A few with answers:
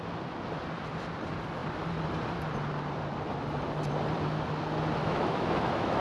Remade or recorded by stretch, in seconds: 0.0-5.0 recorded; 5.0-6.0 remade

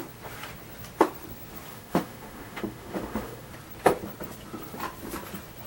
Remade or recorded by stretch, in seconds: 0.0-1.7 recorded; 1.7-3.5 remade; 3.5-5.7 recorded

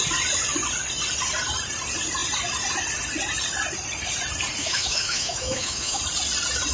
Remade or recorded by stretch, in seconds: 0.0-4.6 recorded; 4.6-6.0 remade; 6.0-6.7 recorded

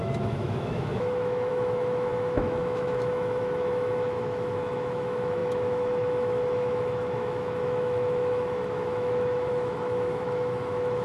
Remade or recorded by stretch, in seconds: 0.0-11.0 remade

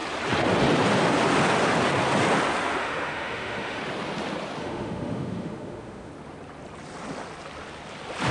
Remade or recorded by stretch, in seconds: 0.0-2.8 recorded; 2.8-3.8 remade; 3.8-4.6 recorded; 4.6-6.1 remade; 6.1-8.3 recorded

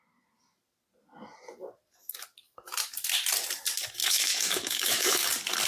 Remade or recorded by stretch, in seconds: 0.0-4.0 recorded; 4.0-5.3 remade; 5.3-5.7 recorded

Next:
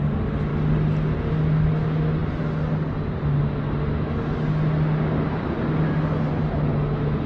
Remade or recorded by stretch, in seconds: 0.0-7.3 recorded

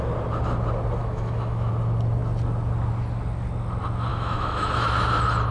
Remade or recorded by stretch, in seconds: 0.0-1.0 recorded; 1.0-1.7 remade; 1.7-4.1 recorded; 4.1-4.9 remade; 4.9-5.5 recorded